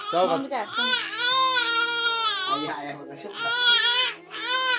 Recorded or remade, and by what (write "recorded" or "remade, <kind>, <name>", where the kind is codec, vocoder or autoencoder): recorded